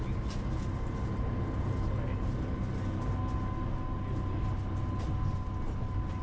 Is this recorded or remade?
recorded